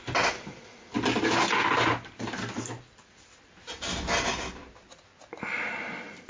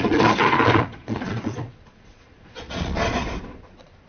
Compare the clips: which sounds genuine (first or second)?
first